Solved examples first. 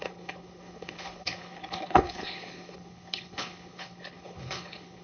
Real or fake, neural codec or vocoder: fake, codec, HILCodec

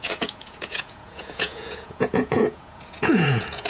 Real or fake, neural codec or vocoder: fake, vocoder, Vocos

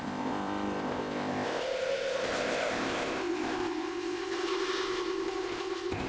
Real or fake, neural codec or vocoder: fake, codec, ZipCodec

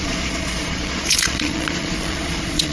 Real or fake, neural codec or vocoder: fake, vocoder, Vocos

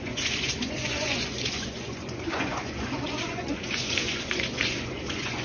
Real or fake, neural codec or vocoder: fake, vocoder, Vocos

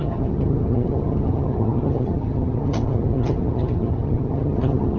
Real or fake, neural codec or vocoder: fake, vocoder, HiFi-GAN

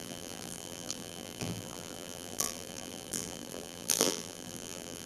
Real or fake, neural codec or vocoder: fake, vocoder, BigVGAN v2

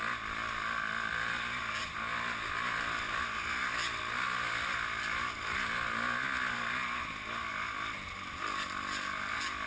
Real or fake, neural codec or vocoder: real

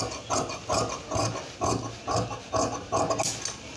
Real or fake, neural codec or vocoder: real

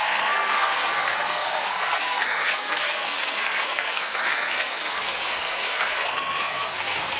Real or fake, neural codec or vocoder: fake, codec, SNAC